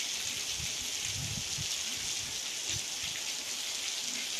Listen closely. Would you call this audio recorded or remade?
recorded